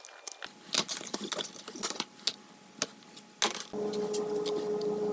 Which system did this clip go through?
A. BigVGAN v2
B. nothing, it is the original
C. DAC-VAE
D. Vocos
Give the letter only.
B